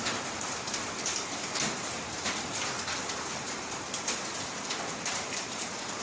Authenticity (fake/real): fake